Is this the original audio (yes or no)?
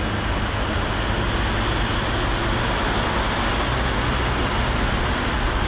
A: yes